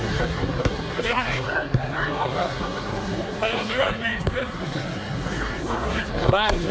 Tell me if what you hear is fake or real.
fake